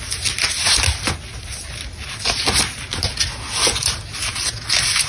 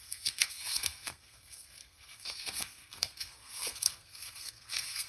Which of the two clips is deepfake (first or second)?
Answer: second